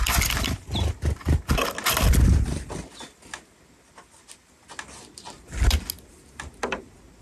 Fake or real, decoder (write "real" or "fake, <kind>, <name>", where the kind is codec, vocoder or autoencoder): real